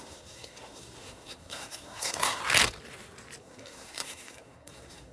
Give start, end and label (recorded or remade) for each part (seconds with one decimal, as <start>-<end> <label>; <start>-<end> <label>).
0.0-2.4 remade; 2.4-3.4 recorded; 3.4-5.1 remade